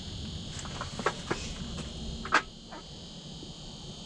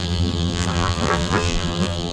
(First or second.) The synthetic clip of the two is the second